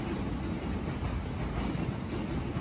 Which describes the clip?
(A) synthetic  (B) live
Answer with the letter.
B